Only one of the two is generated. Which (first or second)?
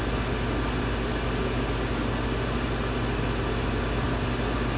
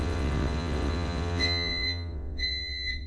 second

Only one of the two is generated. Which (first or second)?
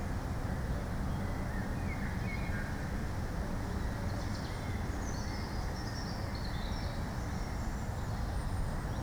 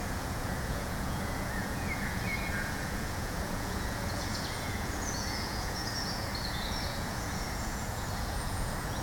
second